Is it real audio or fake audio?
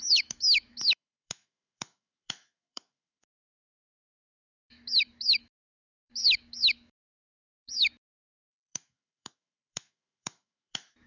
fake